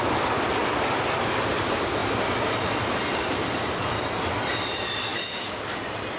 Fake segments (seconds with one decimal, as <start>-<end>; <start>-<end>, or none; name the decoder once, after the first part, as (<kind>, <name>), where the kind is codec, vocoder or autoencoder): 0.0-2.0 (vocoder, BigVGAN v2); 3.0-6.2